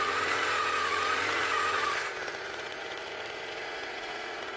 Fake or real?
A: fake